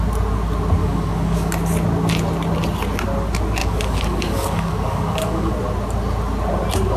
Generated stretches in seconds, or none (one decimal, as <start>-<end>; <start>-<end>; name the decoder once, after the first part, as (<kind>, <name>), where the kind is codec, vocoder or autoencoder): 0.8-1.5 (codec, DAC); 3.6-5.5

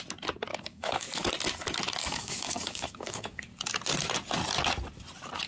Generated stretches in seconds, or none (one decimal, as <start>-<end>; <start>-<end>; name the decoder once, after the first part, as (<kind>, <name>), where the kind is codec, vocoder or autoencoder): 0.5-1.3 (codec, DAC); 2.0-3.4

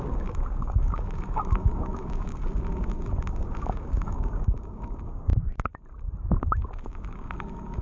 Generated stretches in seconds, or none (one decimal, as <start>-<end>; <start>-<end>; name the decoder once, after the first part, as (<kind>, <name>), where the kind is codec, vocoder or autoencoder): 0.0-2.3 (codec, DAC); 3.7-5.3; 6.8-7.8

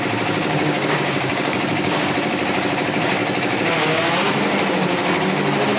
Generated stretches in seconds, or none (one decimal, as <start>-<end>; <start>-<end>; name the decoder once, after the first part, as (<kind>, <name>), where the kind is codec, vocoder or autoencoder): 0.4-2.1 (codec, DAC)

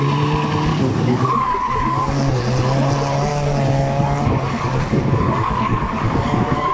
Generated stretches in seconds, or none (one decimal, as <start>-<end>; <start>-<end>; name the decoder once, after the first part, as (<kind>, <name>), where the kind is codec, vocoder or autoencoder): 0.7-2.4 (codec, DAC); 3.3-6.7

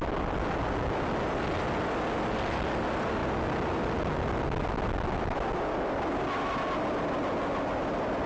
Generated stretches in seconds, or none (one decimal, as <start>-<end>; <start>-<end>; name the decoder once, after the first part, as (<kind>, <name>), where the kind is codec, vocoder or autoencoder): none

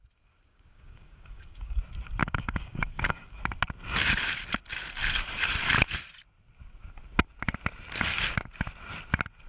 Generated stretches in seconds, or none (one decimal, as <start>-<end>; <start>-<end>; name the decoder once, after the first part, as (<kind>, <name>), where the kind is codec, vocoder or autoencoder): 0.5-1.8 (codec, DAC); 2.2-3.4